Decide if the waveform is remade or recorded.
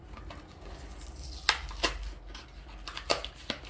recorded